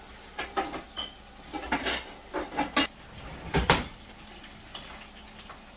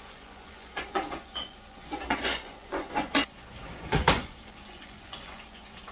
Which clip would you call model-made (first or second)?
second